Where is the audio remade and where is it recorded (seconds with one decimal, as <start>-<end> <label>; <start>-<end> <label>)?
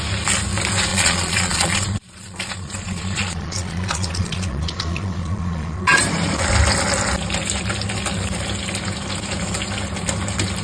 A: 0.0-0.9 recorded; 0.9-6.0 remade; 6.0-10.6 recorded